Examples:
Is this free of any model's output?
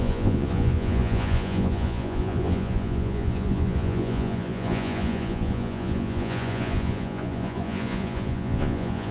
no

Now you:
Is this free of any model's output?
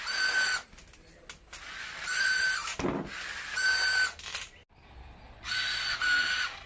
yes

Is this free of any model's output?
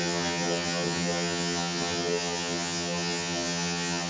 no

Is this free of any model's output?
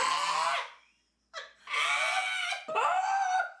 yes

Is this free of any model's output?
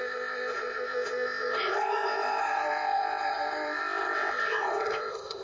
no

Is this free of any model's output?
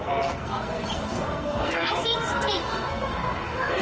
no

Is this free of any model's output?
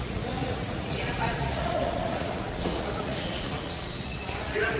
no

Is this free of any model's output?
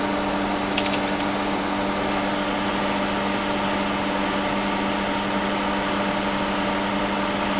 yes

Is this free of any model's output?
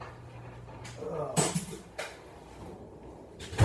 yes